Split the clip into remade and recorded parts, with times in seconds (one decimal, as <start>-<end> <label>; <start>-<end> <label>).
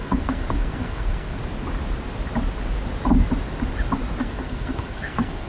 0.0-1.4 remade; 1.4-4.2 recorded; 4.2-5.5 remade